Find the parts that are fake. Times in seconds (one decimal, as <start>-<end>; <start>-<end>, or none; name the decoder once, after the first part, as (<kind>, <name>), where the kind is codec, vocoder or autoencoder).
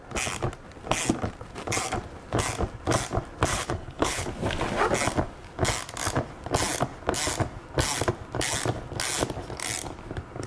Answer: 3.5-4.3 (codec, HILCodec)